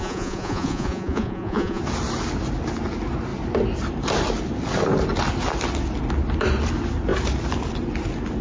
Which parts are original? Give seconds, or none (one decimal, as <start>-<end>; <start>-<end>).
1.8-8.4